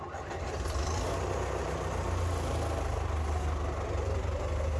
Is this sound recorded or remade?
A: recorded